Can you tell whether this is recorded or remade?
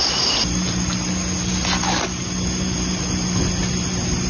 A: recorded